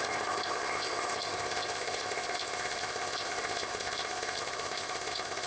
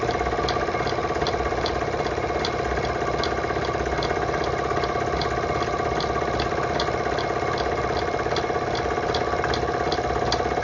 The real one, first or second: second